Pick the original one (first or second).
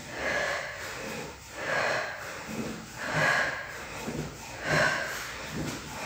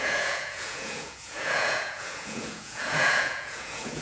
first